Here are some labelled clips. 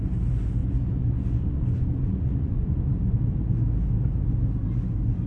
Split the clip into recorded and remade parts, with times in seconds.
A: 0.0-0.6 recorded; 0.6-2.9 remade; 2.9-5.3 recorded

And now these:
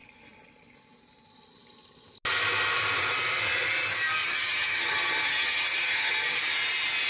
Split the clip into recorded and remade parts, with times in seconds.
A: 0.0-4.2 recorded; 4.2-6.1 remade; 6.1-7.1 recorded

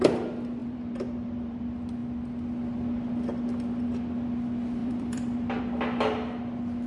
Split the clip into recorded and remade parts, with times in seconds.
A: 0.0-0.6 recorded; 0.6-1.6 remade; 1.6-4.8 recorded; 4.8-5.6 remade; 5.6-6.9 recorded